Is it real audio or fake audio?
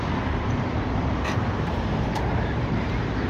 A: fake